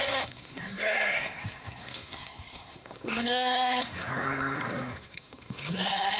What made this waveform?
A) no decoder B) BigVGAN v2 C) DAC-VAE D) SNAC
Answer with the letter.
D